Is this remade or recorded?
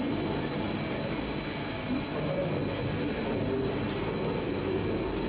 recorded